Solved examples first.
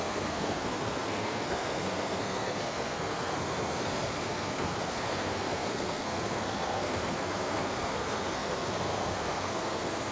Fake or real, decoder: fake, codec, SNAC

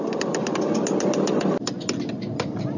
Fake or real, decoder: real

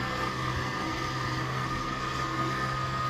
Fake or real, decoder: fake, codec, SNAC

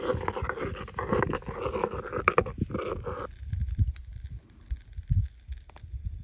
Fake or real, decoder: real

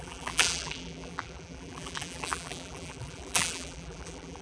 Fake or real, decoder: fake, vocoder, BigVGAN v2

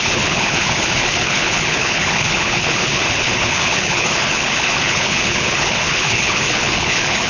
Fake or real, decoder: fake, codec, HILCodec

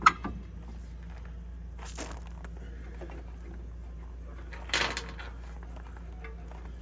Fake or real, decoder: real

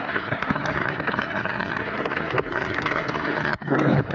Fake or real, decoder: fake, codec, SNAC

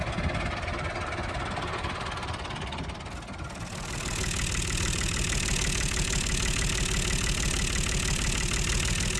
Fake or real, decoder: real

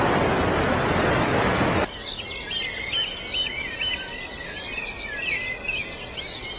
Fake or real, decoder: real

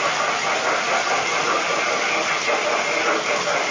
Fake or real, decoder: real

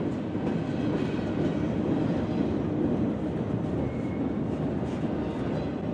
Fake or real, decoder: real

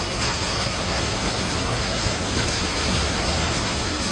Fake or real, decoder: fake, codec, SNAC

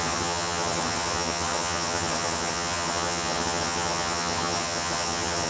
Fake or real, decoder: fake, vocoder, HiFi-GAN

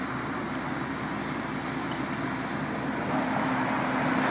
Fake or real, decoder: real